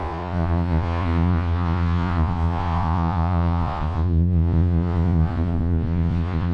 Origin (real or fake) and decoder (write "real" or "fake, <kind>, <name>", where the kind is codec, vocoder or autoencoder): fake, vocoder, Vocos